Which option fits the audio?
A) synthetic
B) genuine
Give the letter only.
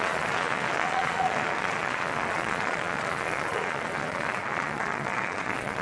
A